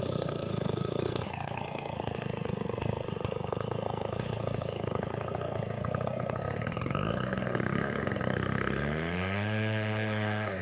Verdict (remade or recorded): remade